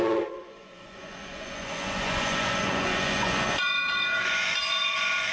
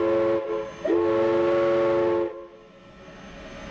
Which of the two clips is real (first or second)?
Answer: second